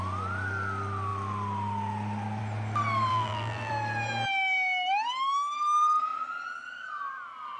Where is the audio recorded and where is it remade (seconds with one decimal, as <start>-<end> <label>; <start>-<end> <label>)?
0.0-3.1 recorded; 3.1-3.7 remade; 3.7-7.6 recorded